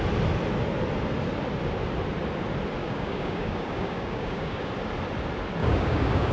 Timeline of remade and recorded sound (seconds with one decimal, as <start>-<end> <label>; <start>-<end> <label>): 0.0-2.8 recorded; 2.8-4.7 remade; 4.7-5.6 recorded; 5.6-6.3 remade